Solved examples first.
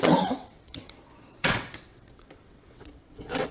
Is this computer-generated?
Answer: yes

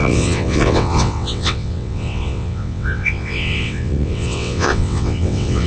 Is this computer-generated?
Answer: yes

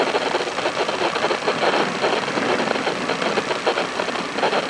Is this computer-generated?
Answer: no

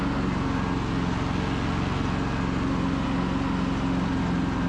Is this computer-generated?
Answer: no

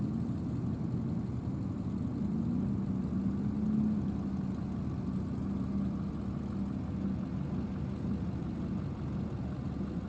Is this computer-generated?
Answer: no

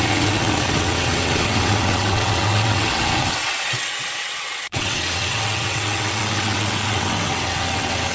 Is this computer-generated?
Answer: yes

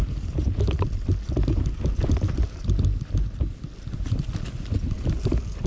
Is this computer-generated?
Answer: no